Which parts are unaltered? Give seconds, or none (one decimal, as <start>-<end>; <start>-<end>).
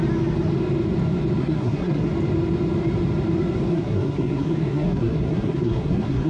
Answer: 0.0-1.4; 2.1-3.7